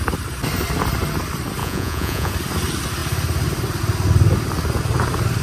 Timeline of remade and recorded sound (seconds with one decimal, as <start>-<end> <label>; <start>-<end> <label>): 0.0-1.6 recorded; 1.6-2.3 remade; 2.3-5.4 recorded